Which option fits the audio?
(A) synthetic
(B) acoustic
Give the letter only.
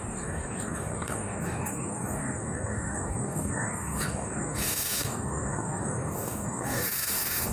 A